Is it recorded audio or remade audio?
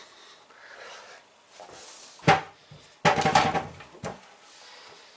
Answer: recorded